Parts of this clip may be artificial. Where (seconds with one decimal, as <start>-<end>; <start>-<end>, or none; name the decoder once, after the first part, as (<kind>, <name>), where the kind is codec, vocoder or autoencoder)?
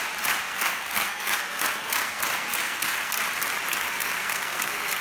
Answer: 0.4-3.2 (codec, SNAC); 3.7-5.0